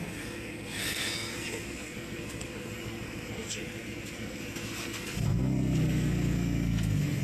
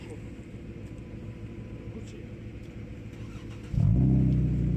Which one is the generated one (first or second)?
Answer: first